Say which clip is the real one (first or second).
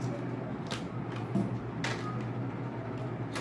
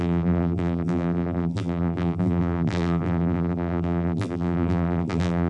first